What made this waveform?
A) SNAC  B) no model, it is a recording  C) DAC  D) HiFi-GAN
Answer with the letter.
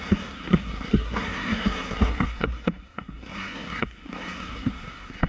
A